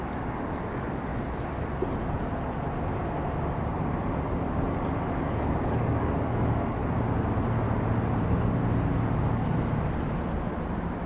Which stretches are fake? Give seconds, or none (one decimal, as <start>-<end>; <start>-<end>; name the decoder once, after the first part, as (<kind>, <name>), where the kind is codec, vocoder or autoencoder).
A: 0.0-1.1 (codec, DAC); 5.1-6.8